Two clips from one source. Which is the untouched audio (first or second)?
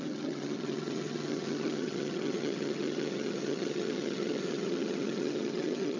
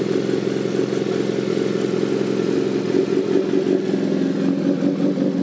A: second